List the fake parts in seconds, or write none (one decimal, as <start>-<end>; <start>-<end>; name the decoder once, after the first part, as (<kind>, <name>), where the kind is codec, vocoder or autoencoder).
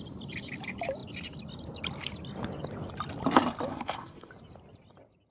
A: 3.7-4.3 (autoencoder, DAC-VAE)